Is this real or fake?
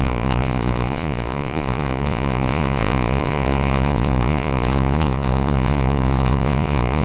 fake